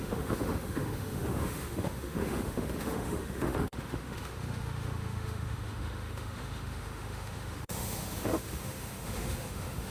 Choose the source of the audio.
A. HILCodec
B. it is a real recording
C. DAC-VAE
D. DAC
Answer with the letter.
C